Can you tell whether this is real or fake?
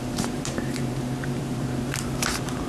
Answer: fake